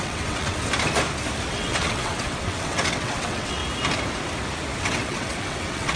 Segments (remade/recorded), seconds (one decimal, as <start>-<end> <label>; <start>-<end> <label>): 0.0-0.6 remade; 0.6-1.5 recorded; 1.5-3.6 remade; 3.6-4.8 recorded; 4.8-6.0 remade